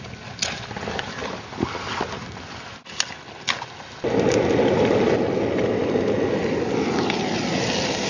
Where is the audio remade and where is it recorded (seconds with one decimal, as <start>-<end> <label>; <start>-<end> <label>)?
0.0-8.1 recorded